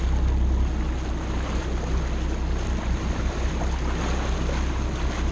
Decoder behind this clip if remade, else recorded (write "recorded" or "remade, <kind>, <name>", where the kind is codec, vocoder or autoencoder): recorded